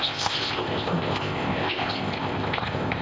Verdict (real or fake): fake